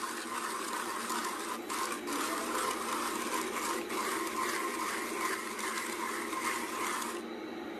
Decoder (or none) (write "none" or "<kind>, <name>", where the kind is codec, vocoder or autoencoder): none